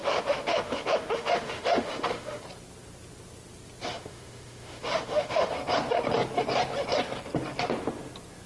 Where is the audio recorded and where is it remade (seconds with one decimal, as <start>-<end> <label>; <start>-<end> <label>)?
0.0-2.4 remade; 2.4-3.9 recorded; 3.9-5.5 remade; 5.5-8.5 recorded